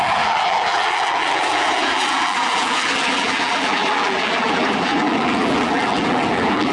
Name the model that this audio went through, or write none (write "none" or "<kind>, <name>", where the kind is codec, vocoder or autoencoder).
vocoder, BigVGAN v2